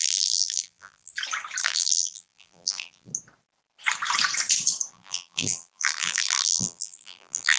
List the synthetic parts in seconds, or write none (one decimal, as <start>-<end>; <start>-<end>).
0.0-1.1; 1.6-3.1; 4.9-7.6